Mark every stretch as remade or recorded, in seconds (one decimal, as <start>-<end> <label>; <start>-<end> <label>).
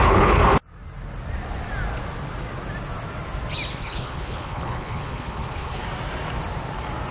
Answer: 0.0-0.4 remade; 0.4-3.7 recorded; 3.7-5.8 remade; 5.8-7.1 recorded